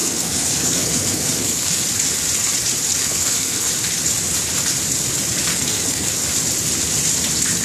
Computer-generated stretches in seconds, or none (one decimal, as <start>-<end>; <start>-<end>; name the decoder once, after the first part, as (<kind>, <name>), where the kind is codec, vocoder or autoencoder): 0.0-1.8 (codec, SNAC); 3.0-3.7; 5.5-6.1